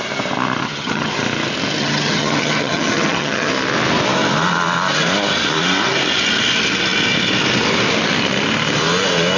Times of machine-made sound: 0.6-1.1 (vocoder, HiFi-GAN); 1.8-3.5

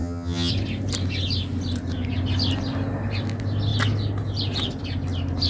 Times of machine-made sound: 0.0-0.5 (vocoder, HiFi-GAN)

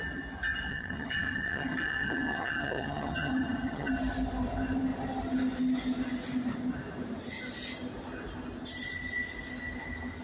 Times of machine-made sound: 0.7-3.9 (vocoder, HiFi-GAN)

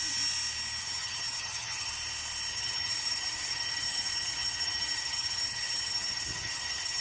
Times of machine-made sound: 0.8-1.9 (vocoder, HiFi-GAN); 2.5-7.0